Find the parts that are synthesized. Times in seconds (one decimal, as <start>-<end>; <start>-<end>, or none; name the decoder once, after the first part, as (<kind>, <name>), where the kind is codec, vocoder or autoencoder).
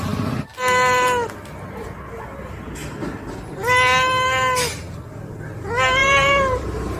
6.0-7.0 (vocoder, BigVGAN v2)